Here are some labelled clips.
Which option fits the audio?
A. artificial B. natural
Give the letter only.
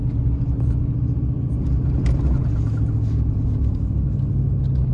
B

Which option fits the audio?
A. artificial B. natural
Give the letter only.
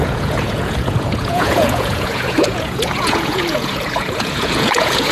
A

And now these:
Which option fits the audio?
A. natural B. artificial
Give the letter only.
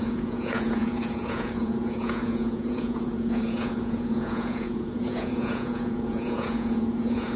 B